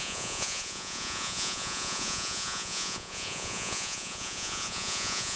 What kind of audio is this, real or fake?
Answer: fake